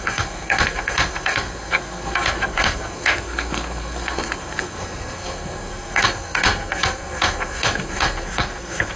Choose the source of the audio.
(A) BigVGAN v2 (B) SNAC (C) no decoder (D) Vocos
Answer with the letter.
B